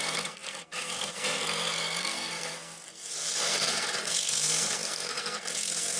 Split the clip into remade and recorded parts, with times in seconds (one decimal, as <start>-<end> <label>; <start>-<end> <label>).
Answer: 0.0-6.0 remade